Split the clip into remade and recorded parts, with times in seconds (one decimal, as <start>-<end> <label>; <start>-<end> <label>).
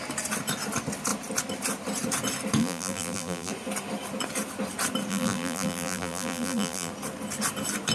0.0-2.6 recorded; 2.6-3.5 remade; 3.5-5.1 recorded; 5.1-6.9 remade; 6.9-7.9 recorded